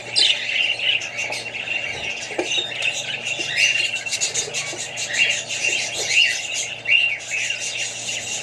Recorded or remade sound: recorded